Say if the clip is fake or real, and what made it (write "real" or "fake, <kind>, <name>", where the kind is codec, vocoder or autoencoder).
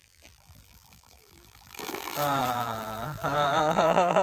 fake, vocoder, BigVGAN v2